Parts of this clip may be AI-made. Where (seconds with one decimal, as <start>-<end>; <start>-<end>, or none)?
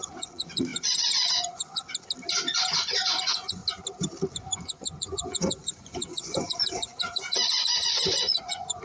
0.0-1.8; 2.5-3.6; 4.3-8.8